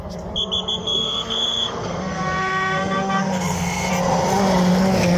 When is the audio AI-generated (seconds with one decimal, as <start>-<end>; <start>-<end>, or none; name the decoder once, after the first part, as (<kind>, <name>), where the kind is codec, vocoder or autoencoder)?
0.8-3.9 (codec, SNAC)